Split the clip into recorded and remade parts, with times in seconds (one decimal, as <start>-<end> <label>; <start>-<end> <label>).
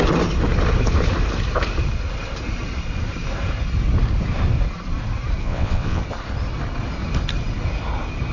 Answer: 0.0-5.4 recorded; 5.4-6.0 remade; 6.0-8.3 recorded